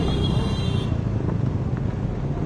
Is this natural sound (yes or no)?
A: yes